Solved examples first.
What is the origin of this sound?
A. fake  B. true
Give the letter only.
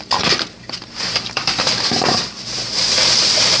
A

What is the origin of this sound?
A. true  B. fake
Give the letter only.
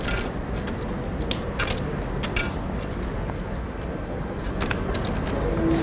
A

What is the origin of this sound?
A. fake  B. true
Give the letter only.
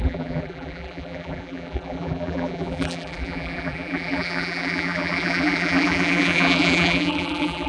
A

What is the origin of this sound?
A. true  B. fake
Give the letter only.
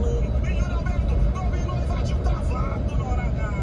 A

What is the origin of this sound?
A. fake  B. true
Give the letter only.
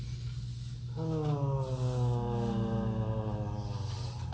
B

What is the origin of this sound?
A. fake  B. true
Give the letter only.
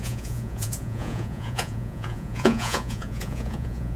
A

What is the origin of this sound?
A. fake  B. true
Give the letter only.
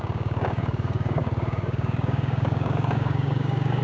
A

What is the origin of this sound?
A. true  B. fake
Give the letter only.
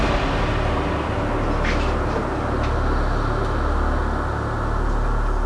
A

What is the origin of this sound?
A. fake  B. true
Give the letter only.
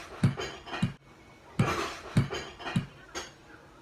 B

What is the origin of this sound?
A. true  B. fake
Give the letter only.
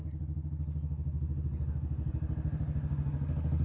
A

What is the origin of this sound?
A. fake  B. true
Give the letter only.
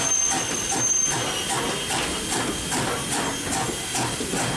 B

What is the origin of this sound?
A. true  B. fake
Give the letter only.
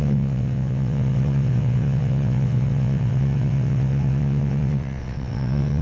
B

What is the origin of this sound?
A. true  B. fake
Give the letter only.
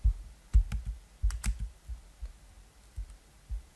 A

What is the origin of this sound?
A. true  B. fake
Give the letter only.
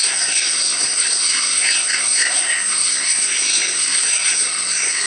B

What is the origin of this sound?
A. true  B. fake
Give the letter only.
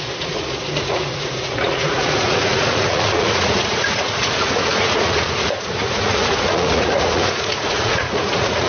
B